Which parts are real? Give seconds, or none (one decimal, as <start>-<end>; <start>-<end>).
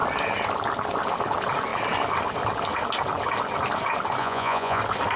0.0-4.2; 4.8-5.2